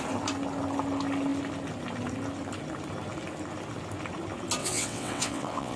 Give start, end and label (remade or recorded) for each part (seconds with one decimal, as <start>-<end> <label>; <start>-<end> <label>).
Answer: 0.0-4.6 recorded; 4.6-5.8 remade